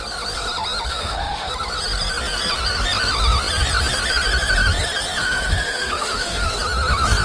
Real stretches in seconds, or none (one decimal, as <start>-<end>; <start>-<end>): 0.0-0.9; 1.5-5.2; 6.5-7.2